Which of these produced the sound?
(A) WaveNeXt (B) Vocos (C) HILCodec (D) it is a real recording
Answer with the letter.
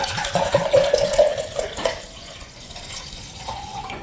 B